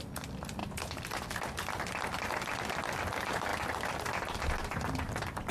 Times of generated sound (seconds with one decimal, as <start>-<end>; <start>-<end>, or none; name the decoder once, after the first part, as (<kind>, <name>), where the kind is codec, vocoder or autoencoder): none